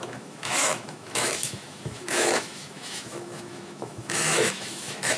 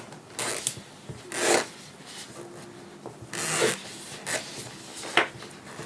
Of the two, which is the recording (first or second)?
second